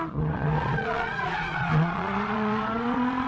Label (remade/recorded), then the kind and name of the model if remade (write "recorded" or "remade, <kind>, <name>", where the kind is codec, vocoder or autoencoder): remade, vocoder, Vocos